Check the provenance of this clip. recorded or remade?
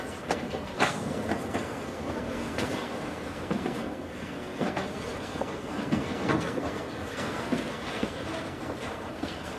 remade